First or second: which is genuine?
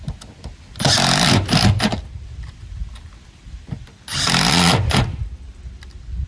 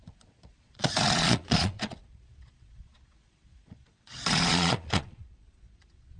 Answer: first